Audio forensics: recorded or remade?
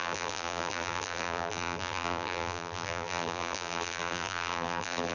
remade